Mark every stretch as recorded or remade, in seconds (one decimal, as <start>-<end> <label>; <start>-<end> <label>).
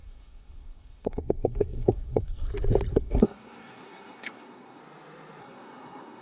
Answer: 0.0-2.5 remade; 2.5-2.9 recorded; 2.9-4.8 remade; 4.8-5.4 recorded; 5.4-6.2 remade